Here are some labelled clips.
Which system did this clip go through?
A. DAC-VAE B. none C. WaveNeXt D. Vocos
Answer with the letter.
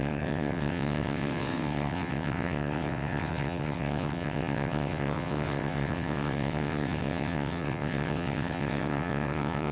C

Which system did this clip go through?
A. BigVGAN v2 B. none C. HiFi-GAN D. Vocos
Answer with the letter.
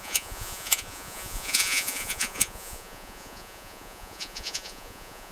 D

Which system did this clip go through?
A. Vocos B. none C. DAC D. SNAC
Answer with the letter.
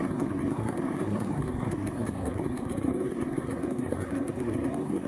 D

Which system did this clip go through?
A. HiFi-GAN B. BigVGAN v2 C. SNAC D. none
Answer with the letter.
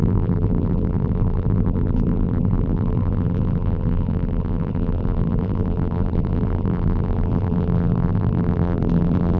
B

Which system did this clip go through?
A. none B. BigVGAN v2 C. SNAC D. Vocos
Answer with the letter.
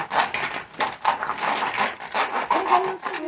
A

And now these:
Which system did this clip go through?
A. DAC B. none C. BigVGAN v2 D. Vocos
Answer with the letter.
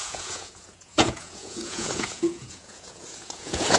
D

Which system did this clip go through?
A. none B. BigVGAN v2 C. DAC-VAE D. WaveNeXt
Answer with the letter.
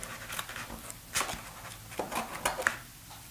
A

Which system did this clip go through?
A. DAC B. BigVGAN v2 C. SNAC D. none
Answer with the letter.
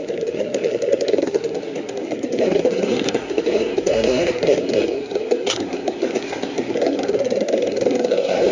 C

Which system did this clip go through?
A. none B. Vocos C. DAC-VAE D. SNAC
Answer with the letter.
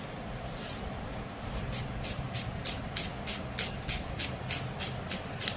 A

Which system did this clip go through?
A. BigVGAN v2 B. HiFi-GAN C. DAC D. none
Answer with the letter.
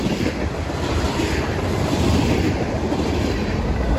A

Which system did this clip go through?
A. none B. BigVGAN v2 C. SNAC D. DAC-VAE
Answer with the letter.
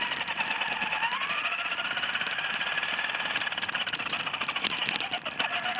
A